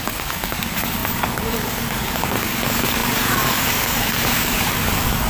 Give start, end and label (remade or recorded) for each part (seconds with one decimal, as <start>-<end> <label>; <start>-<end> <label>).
0.0-5.3 remade